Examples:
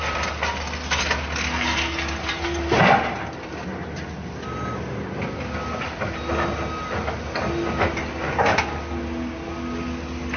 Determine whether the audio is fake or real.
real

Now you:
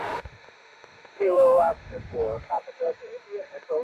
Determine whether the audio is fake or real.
fake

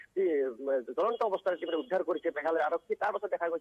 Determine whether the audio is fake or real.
fake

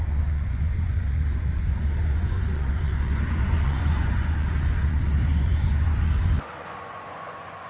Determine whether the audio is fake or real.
fake